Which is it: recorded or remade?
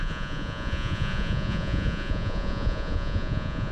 remade